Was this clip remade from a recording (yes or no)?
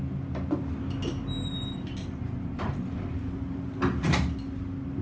no